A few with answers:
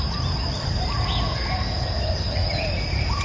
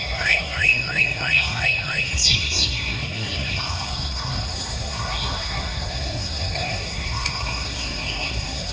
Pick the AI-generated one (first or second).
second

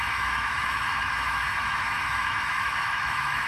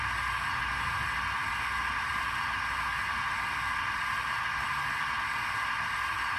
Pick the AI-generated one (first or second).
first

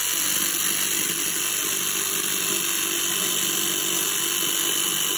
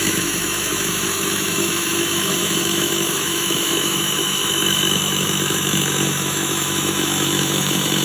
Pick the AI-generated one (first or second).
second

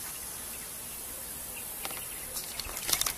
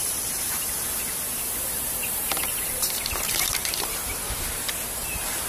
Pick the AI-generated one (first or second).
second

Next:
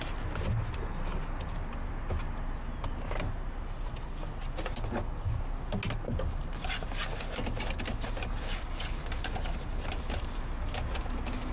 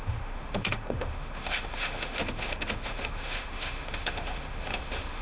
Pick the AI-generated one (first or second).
second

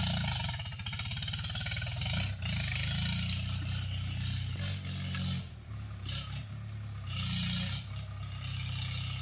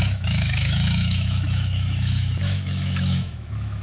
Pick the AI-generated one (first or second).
second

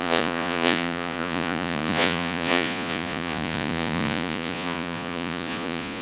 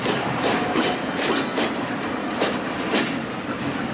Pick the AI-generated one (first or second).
first